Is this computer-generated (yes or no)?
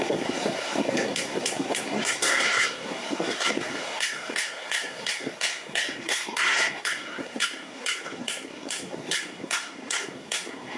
yes